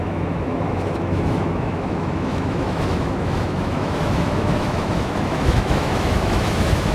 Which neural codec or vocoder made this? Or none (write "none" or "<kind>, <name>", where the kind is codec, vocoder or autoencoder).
autoencoder, DAC-VAE